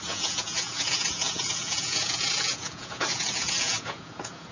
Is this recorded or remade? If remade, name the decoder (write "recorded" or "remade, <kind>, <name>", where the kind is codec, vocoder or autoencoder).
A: remade, vocoder, Vocos